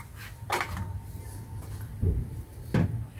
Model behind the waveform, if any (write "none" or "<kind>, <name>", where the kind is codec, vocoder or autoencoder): none